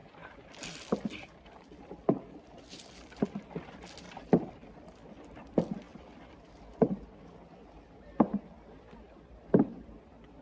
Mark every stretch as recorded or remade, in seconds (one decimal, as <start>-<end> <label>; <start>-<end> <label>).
0.0-4.5 remade; 4.5-5.9 recorded; 5.9-6.9 remade; 6.9-10.4 recorded